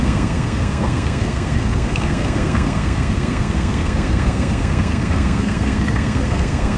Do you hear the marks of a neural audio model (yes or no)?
yes